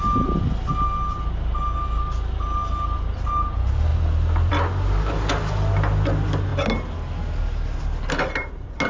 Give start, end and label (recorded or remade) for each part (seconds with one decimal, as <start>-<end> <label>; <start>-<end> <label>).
0.0-8.9 recorded